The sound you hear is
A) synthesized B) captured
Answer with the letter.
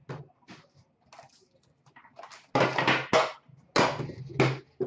B